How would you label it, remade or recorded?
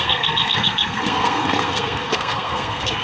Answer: remade